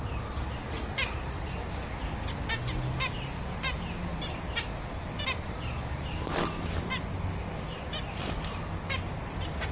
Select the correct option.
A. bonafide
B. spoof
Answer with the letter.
A